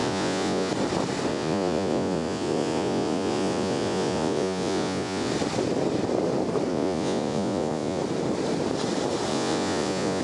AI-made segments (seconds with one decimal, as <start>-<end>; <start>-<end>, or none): 0.0-0.7; 1.3-5.3; 6.7-8.0; 9.3-10.2